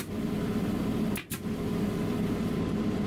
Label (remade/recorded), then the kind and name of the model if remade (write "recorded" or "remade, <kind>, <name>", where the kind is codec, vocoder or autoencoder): recorded